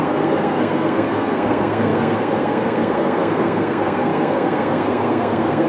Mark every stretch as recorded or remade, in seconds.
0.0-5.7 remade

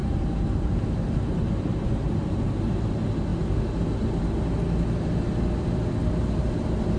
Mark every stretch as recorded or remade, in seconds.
0.0-2.9 remade; 2.9-7.0 recorded

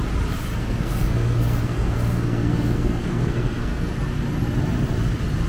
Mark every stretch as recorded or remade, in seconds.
0.0-0.6 recorded; 0.6-3.9 remade; 3.9-5.5 recorded

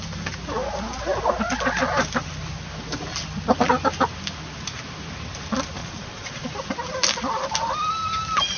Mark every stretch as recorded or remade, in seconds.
0.0-5.8 recorded; 5.8-6.5 remade; 6.5-8.6 recorded

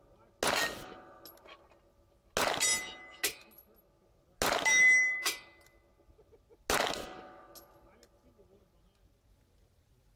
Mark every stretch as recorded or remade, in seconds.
0.0-10.2 recorded

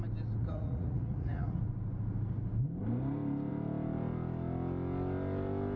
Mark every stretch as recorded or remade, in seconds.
0.0-0.4 recorded; 0.4-1.6 remade; 1.6-5.8 recorded

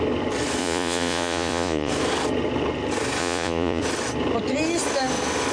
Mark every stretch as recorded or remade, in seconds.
0.0-0.6 recorded; 0.6-1.9 remade; 1.9-3.2 recorded; 3.2-3.8 remade; 3.8-5.5 recorded

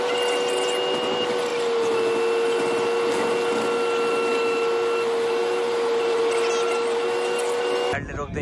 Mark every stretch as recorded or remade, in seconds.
0.0-8.4 recorded